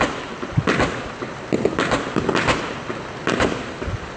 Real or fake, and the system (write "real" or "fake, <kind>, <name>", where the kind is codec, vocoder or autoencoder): real